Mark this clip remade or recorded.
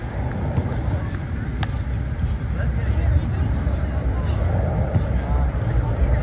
recorded